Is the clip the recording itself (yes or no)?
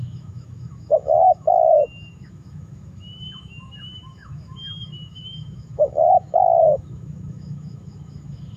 no